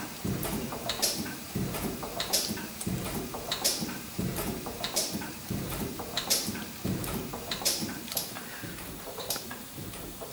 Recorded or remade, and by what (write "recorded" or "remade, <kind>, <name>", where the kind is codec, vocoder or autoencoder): remade, vocoder, BigVGAN v2